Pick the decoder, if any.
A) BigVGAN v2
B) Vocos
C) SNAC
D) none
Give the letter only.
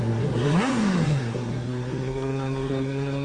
C